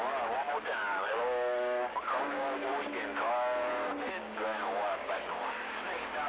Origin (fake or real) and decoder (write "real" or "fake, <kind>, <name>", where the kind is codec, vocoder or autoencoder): fake, codec, DAC